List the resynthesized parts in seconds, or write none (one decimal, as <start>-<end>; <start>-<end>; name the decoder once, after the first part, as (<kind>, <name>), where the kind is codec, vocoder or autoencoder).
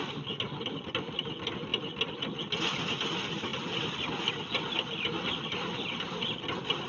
none